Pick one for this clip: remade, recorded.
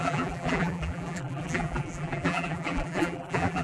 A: remade